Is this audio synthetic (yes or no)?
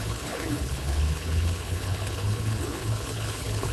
yes